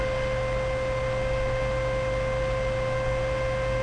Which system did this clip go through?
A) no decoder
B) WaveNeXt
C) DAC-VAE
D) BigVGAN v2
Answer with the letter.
A